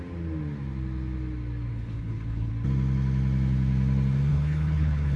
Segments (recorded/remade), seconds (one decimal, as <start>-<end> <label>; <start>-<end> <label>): 0.0-1.7 recorded; 1.7-2.5 remade; 2.5-4.3 recorded; 4.3-5.2 remade